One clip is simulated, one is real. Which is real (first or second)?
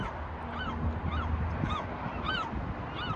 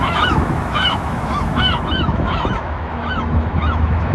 first